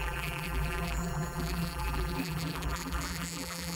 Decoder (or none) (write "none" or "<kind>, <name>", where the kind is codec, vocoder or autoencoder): vocoder, BigVGAN v2